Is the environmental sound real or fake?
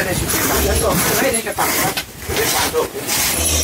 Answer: fake